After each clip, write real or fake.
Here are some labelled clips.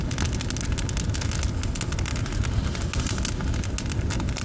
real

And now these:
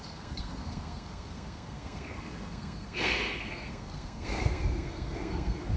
fake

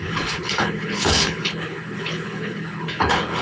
fake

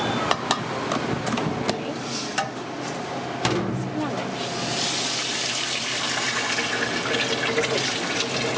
real